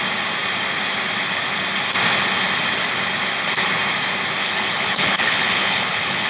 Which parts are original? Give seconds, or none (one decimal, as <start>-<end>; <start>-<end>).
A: 0.0-4.4

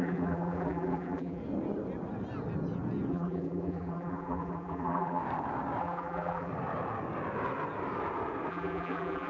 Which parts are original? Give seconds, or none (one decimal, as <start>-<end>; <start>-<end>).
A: 1.4-3.1; 5.2-5.8; 6.5-8.5